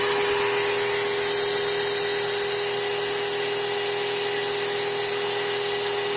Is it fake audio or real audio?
real